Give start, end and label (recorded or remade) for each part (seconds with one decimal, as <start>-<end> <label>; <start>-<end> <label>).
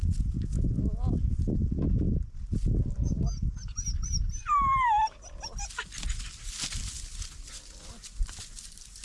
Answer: 0.0-9.0 recorded